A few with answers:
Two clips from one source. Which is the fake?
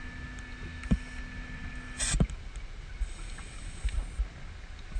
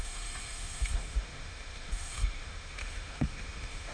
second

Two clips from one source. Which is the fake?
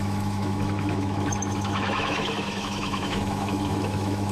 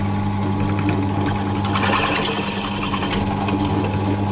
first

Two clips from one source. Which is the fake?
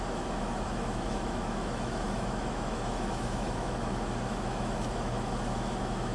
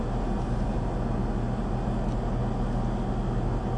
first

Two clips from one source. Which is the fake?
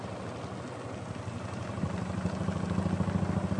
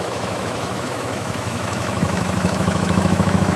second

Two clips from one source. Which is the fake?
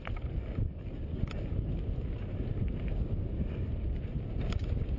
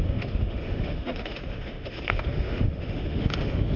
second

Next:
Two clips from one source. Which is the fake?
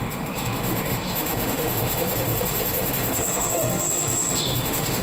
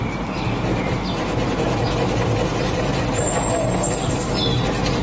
first